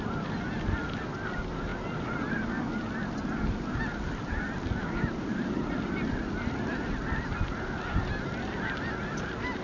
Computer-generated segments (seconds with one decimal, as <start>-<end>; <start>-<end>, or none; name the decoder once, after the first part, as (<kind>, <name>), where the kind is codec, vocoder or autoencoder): none